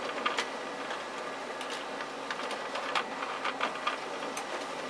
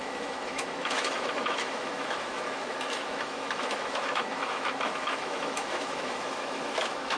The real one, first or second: first